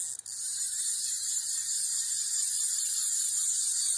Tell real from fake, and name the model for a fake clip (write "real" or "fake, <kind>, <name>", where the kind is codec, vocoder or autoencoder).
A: real